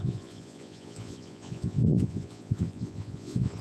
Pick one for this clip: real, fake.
fake